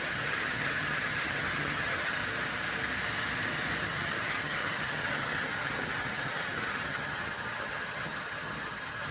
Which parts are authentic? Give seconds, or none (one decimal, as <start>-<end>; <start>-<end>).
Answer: 2.2-3.9